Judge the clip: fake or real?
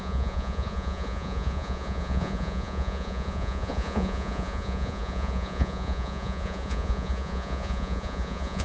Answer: fake